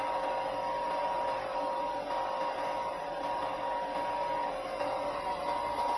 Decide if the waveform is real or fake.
real